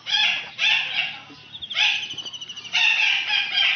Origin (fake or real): real